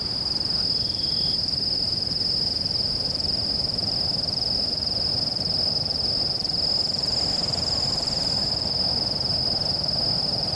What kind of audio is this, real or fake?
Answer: real